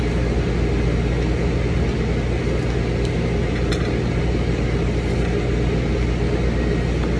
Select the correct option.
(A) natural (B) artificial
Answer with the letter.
A